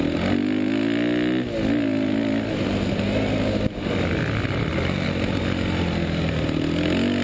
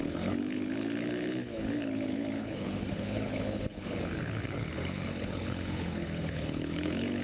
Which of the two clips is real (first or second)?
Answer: first